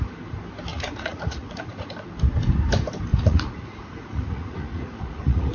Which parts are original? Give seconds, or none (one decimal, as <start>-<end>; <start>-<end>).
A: 0.0-0.7; 1.9-3.1